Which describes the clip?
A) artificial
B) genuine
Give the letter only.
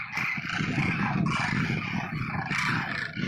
B